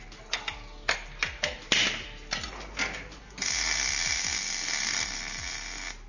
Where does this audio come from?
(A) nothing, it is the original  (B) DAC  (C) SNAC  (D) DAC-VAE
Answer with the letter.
A